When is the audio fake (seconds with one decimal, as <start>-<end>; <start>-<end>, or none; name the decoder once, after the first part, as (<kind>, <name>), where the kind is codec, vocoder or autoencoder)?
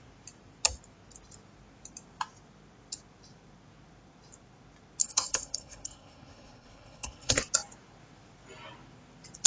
5.0-7.4 (codec, HILCodec)